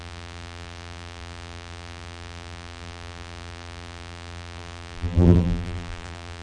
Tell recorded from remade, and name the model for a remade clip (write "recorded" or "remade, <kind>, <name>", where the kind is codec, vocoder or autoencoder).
remade, vocoder, BigVGAN v2